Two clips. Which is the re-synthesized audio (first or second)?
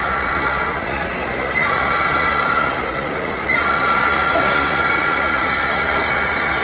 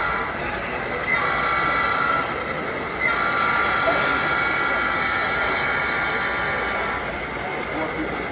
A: first